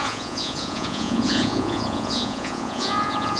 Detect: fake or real fake